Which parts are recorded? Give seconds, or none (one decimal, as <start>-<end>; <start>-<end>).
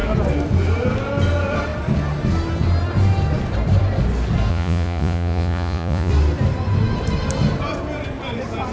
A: 0.0-4.5; 6.1-8.7